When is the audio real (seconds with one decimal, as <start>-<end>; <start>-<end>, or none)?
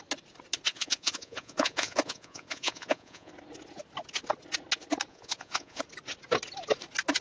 0.0-0.7; 3.3-5.1; 5.8-7.2